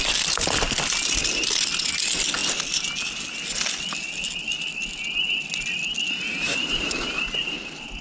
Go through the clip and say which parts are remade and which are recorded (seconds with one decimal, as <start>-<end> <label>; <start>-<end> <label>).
0.0-6.3 recorded; 6.3-8.0 remade